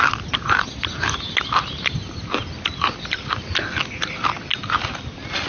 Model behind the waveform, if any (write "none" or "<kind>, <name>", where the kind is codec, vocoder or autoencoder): none